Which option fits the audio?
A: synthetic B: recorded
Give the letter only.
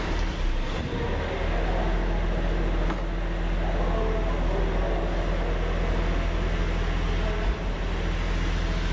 B